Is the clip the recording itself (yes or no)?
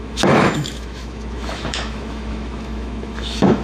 no